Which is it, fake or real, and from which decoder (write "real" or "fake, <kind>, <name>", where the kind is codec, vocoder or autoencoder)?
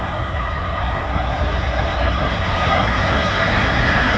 fake, codec, SNAC